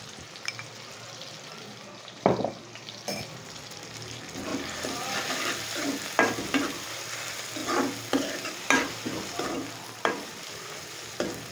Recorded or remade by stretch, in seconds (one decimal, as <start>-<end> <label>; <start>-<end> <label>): 0.0-4.5 remade; 4.5-5.3 recorded; 5.3-7.6 remade; 7.6-8.2 recorded; 8.2-11.5 remade

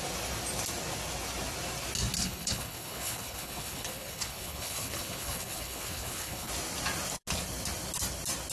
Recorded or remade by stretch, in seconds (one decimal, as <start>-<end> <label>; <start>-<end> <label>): 0.0-2.2 recorded; 2.2-6.5 remade; 6.5-8.5 recorded

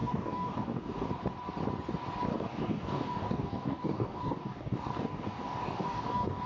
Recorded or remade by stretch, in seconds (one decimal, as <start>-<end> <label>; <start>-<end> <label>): 0.0-1.1 remade; 1.1-2.3 recorded; 2.3-6.5 remade